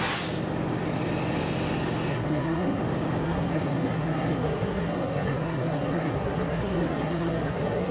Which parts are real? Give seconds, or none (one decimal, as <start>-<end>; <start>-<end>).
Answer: 0.0-2.1; 2.8-3.2

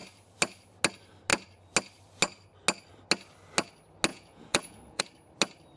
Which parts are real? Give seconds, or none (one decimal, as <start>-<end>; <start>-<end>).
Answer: 0.0-4.1; 5.0-5.8

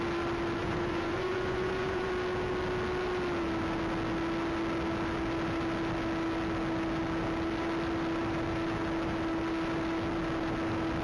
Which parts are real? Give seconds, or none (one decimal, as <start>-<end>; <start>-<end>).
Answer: 0.0-0.6; 2.1-11.0

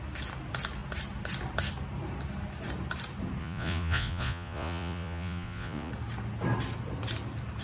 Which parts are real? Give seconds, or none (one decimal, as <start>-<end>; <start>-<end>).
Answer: 0.0-3.4; 5.9-7.6

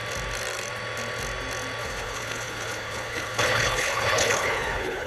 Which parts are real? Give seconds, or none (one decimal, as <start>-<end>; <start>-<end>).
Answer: 0.0-1.8

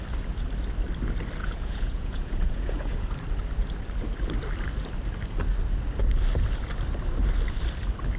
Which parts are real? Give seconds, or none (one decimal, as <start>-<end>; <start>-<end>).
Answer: 0.0-1.4; 3.1-8.2

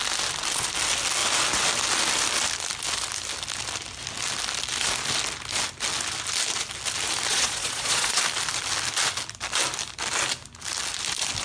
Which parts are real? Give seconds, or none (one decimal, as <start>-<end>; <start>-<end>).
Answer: 0.0-7.3; 8.2-11.4